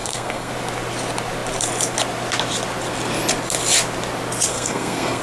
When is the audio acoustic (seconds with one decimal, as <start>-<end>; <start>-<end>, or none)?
0.5-4.5